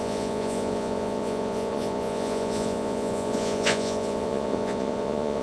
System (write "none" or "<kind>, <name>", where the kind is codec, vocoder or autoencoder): vocoder, Vocos